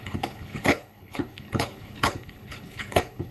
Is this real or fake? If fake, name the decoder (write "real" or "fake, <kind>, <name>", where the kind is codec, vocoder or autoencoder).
fake, codec, HILCodec